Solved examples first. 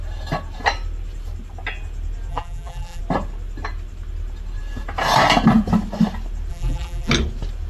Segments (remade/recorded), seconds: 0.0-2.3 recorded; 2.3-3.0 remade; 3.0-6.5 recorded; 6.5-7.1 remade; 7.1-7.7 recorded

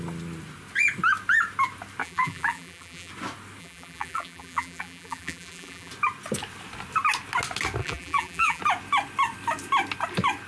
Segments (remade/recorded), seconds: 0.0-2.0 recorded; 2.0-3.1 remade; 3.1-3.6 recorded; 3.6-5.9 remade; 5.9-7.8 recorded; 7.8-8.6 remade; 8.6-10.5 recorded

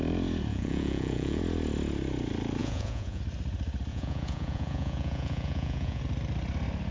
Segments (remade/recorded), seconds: 0.0-0.5 recorded; 0.5-1.4 remade; 1.4-2.6 recorded; 2.6-3.2 remade; 3.2-3.9 recorded; 3.9-6.0 remade; 6.0-6.9 recorded